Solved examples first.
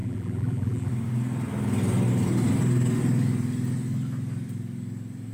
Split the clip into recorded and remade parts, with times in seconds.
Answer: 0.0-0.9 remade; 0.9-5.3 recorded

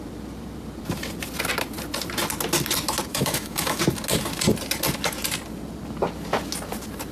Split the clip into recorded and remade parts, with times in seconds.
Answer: 0.0-3.1 recorded; 3.1-3.8 remade; 3.8-7.1 recorded